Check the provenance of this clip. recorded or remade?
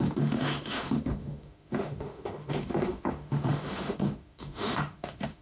remade